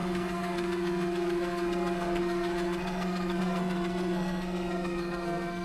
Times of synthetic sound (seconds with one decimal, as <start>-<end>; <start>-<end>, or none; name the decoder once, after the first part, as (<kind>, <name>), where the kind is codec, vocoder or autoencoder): 0.0-5.6 (codec, SNAC)